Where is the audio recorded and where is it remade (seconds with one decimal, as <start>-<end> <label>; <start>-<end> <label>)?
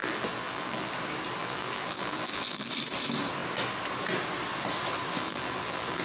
0.0-0.9 remade; 0.9-1.4 recorded; 1.4-2.7 remade; 2.7-5.2 recorded; 5.2-6.0 remade